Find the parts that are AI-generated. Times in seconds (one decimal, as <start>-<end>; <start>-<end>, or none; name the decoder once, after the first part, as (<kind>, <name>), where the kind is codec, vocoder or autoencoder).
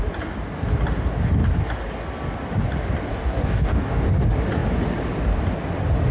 3.1-4.1 (codec, DAC)